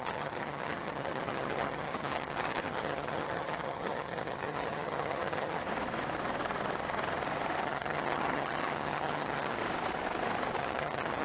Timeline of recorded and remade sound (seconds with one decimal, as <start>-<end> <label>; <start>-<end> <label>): 0.0-5.6 remade; 5.6-7.6 recorded; 7.6-9.6 remade; 9.6-10.6 recorded; 10.6-11.2 remade